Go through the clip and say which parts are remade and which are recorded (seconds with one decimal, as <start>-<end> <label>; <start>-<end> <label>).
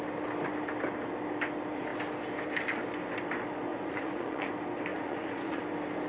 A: 0.0-3.7 recorded; 3.7-4.5 remade; 4.5-4.9 recorded; 4.9-5.6 remade; 5.6-6.1 recorded